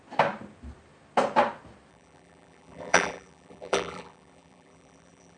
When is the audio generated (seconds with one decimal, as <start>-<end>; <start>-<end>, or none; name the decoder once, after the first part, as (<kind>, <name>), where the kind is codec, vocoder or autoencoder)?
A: 1.9-5.4 (vocoder, BigVGAN v2)